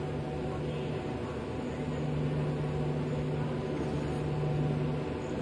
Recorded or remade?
recorded